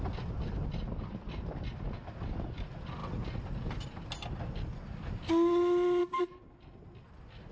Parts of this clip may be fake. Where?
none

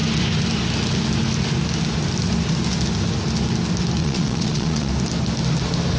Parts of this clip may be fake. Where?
4.0-4.9 (vocoder, Vocos)

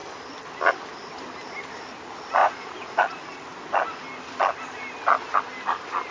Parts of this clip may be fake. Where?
2.4-3.0 (vocoder, Vocos)

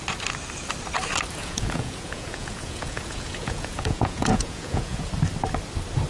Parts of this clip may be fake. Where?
1.4-5.1 (vocoder, Vocos)